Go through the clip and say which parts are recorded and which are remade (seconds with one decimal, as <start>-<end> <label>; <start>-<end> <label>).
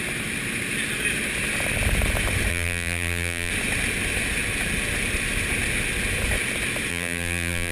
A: 0.0-2.5 recorded; 2.5-3.5 remade; 3.5-6.9 recorded; 6.9-7.7 remade